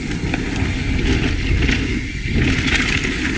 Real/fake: real